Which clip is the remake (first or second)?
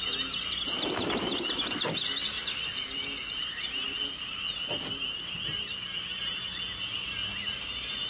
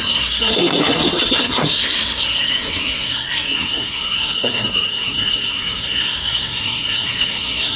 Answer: second